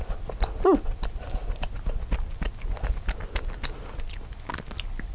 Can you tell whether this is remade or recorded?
recorded